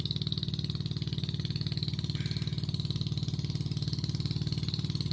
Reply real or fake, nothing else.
real